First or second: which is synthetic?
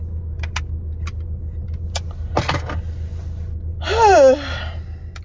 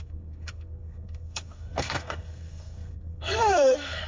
second